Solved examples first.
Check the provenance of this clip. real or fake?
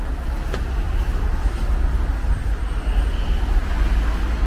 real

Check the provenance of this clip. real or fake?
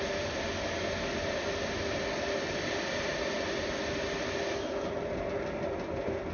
real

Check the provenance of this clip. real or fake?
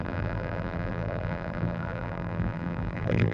fake